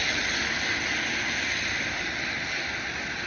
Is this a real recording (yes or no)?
yes